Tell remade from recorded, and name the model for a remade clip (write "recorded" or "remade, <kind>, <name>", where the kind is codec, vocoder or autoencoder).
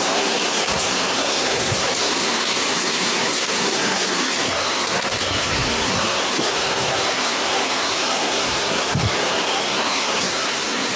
remade, codec, SNAC